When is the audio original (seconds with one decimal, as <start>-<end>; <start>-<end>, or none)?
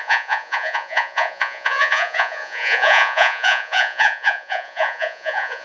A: none